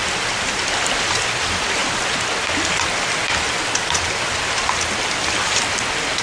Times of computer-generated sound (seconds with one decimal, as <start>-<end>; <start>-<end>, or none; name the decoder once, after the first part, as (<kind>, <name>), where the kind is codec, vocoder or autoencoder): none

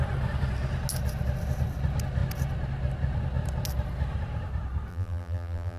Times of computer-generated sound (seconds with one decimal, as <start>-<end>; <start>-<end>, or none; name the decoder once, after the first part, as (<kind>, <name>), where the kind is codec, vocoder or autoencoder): 4.9-5.8 (vocoder, BigVGAN v2)

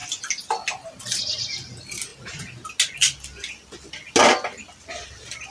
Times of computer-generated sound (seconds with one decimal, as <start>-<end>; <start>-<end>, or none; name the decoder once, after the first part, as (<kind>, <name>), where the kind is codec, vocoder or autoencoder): none

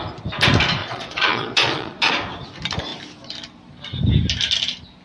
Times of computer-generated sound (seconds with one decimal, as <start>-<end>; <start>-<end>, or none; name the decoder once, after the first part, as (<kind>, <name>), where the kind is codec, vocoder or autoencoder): 0.8-2.1 (vocoder, Vocos)

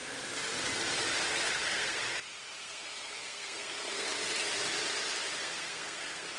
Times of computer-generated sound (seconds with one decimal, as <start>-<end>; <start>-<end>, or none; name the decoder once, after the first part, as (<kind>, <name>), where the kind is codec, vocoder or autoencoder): 1.5-2.0 (codec, SNAC); 2.6-4.1; 5.4-6.4

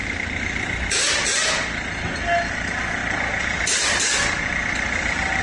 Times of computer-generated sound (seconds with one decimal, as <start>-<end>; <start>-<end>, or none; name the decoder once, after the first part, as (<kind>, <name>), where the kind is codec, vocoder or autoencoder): none

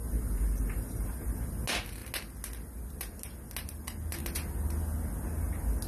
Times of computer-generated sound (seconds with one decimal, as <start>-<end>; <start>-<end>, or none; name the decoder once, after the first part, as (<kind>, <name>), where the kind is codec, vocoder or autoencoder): 0.0-1.4 (vocoder, BigVGAN v2)

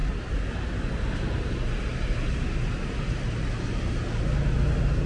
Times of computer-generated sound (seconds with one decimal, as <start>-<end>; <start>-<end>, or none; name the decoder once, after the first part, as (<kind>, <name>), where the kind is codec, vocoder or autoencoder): none